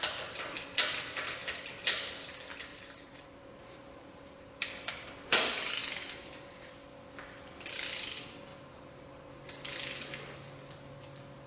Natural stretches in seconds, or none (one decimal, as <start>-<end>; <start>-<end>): 0.0-2.7; 4.6-8.5; 9.3-11.5